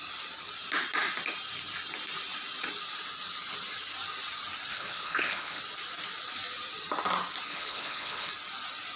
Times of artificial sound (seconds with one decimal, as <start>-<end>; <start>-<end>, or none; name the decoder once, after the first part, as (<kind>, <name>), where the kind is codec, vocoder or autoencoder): 4.7-5.6 (codec, HILCodec); 7.5-8.3